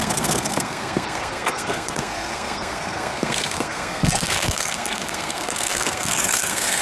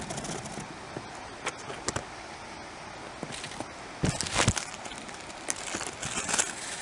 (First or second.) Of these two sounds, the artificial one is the first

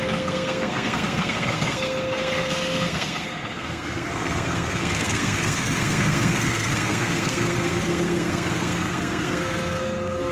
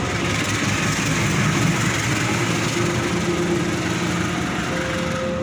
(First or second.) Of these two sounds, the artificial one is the first